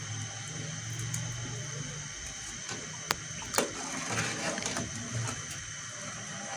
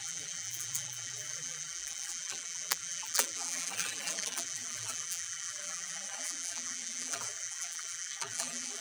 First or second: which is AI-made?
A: second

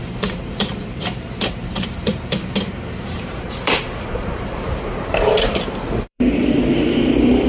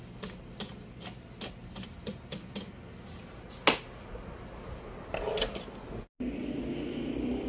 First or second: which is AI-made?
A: first